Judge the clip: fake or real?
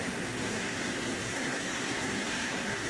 fake